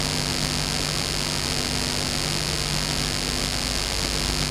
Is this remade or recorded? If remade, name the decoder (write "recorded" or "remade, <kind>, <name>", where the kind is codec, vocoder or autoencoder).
recorded